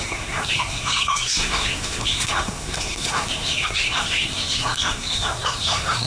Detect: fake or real fake